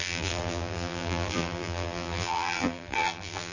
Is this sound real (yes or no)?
no